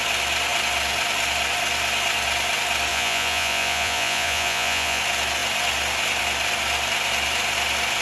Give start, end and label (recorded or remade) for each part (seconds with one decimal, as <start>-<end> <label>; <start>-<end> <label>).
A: 0.0-2.9 recorded; 2.9-5.0 remade; 5.0-8.0 recorded